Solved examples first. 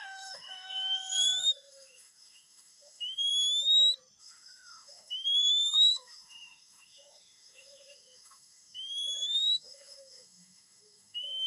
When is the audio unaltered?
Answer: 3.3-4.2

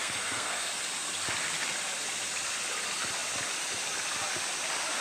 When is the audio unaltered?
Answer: 0.7-5.0

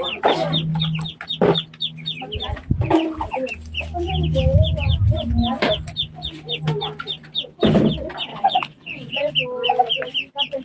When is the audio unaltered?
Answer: 0.0-8.3; 9.3-10.6

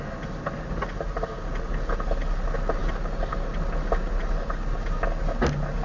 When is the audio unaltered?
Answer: 0.0-5.8

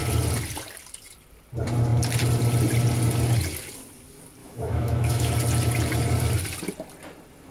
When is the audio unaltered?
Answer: 0.0-4.4; 5.3-7.5

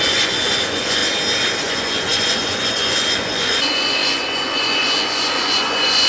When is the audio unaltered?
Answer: 1.0-1.6